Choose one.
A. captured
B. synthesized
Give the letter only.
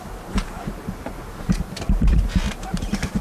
B